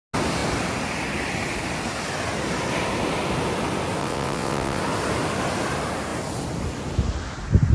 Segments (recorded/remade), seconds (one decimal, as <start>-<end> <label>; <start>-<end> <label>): 0.0-4.0 recorded; 4.0-4.8 remade; 4.8-7.7 recorded